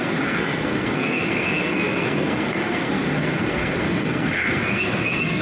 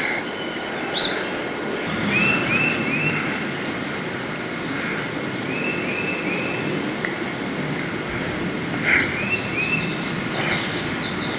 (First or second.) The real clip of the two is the second